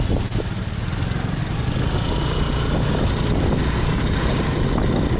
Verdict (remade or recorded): recorded